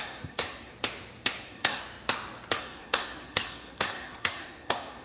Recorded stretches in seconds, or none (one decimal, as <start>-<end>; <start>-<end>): 0.7-1.4; 1.8-2.6